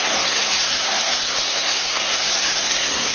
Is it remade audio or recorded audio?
remade